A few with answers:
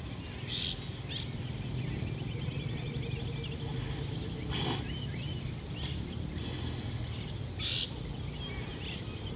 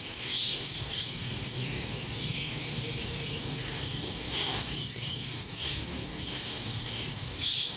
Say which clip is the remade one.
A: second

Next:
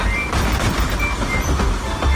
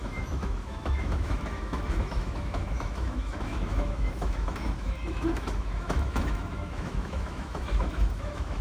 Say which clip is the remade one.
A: second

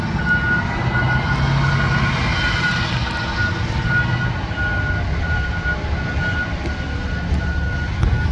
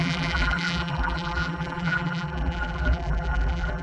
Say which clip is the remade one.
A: second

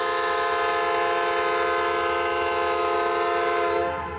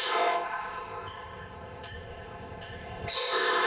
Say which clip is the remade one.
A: second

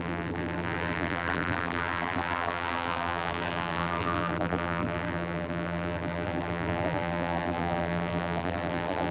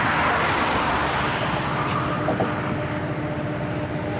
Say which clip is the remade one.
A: first